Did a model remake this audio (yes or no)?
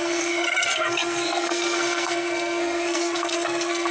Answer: yes